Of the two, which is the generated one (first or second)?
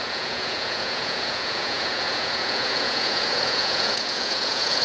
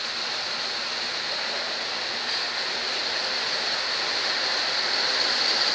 first